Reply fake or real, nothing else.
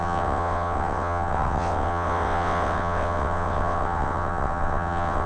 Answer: fake